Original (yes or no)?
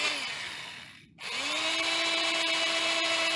yes